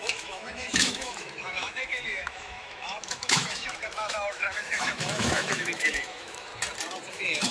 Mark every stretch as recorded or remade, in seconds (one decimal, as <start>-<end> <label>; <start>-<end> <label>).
0.0-6.5 remade; 6.5-7.1 recorded; 7.1-7.5 remade